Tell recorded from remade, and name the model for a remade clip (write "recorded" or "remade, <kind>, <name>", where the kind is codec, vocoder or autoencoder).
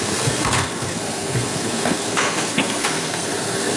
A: remade, codec, SNAC